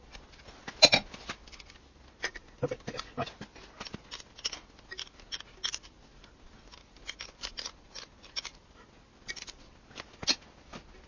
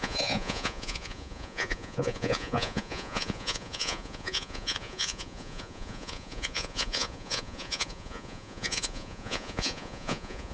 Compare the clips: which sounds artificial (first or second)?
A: second